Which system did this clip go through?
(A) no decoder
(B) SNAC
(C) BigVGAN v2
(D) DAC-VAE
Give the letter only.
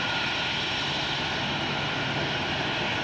A